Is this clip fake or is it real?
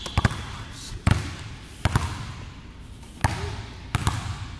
real